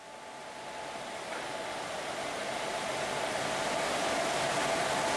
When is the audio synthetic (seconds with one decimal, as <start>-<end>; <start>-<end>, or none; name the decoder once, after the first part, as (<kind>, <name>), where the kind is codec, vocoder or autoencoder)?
0.4-3.4 (vocoder, BigVGAN v2)